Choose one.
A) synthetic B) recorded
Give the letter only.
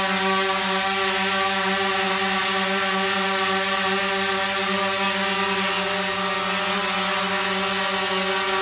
B